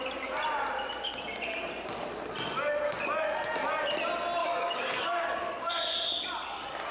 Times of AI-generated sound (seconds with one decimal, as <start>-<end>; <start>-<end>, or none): 4.4-5.7